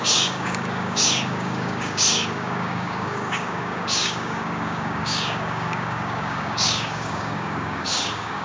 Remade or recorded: remade